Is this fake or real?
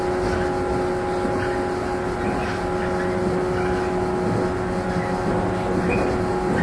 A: real